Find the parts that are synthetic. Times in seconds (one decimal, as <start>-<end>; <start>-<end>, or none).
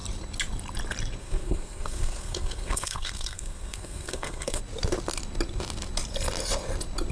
1.2-4.6